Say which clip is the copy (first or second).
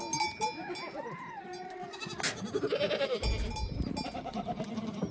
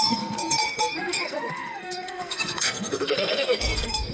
second